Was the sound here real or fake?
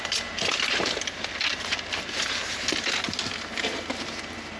fake